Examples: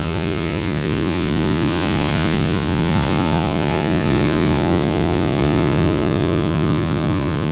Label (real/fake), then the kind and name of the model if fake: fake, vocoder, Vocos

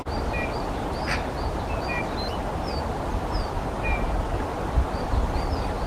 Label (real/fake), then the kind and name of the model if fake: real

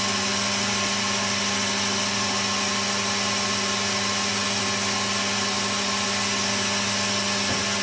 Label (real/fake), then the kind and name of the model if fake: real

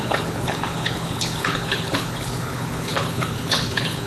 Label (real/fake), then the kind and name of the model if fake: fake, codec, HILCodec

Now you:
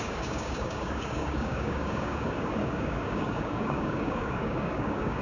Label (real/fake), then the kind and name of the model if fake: fake, codec, DAC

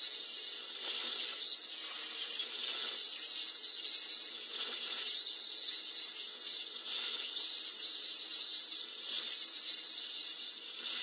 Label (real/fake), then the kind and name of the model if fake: fake, vocoder, BigVGAN v2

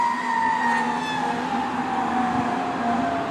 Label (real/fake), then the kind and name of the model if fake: real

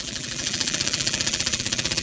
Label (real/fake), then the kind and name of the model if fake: fake, vocoder, BigVGAN v2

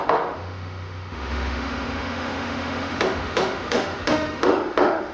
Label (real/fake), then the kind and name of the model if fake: fake, autoencoder, DAC-VAE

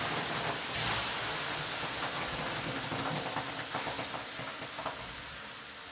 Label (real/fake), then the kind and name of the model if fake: real